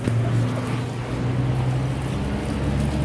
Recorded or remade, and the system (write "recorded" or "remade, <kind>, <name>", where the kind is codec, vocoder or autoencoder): recorded